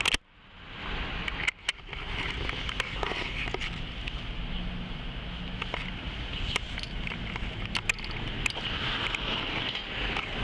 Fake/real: real